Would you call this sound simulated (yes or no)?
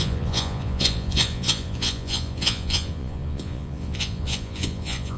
yes